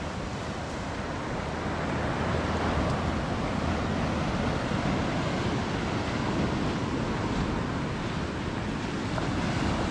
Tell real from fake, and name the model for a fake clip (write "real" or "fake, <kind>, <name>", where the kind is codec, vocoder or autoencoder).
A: real